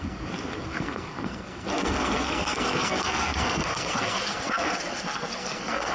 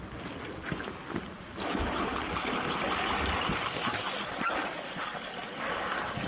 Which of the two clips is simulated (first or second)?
first